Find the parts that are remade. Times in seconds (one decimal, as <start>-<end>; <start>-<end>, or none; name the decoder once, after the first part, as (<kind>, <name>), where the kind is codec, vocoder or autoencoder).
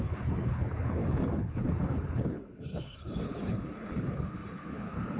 0.0-5.2 (codec, HILCodec)